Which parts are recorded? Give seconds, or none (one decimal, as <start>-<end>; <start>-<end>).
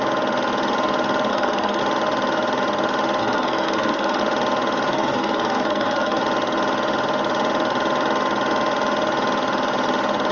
0.0-1.3; 1.8-3.2; 4.2-4.9; 6.2-10.3